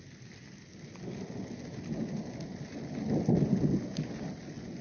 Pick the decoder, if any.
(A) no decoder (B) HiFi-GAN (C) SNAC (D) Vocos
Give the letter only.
A